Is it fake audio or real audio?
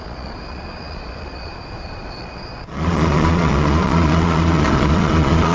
fake